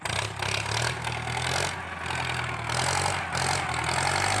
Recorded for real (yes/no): yes